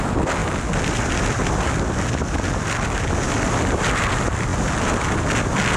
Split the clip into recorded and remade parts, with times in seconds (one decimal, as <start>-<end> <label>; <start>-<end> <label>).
0.0-5.8 recorded